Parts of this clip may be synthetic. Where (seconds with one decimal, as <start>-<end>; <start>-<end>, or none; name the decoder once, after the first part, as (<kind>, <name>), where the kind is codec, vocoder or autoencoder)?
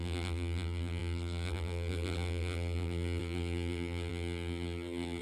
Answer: 0.0-5.2 (vocoder, BigVGAN v2)